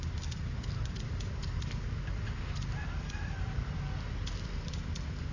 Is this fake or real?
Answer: fake